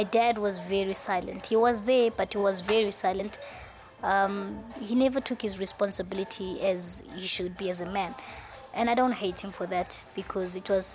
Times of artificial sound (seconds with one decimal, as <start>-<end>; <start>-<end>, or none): none

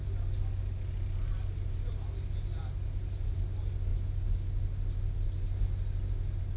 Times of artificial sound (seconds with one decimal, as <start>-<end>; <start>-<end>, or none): none